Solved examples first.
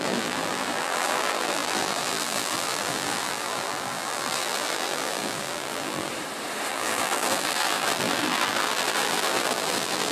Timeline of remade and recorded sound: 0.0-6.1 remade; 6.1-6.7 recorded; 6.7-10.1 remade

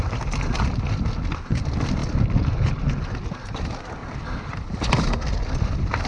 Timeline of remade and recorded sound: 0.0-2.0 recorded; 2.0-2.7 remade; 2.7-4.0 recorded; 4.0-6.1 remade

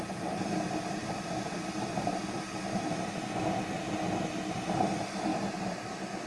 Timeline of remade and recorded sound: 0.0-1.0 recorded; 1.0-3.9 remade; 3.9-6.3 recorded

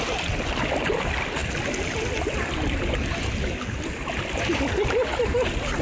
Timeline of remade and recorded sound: 0.0-5.8 recorded